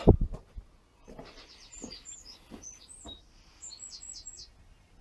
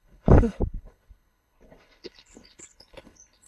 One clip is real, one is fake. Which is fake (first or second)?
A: second